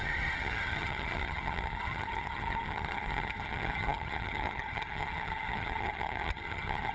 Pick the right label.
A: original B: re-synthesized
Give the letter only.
B